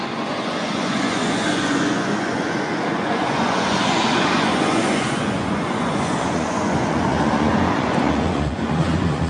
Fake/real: fake